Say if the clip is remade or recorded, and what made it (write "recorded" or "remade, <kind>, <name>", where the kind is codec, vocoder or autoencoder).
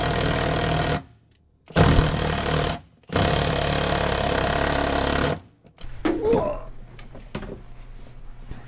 recorded